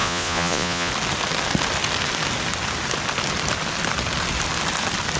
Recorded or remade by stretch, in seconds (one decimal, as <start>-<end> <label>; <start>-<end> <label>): 0.0-0.9 remade; 0.9-5.2 recorded